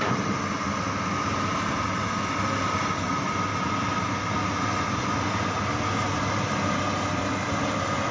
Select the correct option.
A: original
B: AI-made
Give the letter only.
A